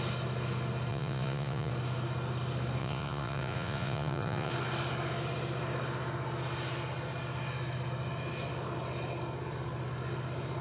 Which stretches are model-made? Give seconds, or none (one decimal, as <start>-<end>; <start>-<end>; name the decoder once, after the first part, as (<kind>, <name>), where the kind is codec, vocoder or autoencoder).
0.9-1.7 (vocoder, Vocos); 2.8-4.5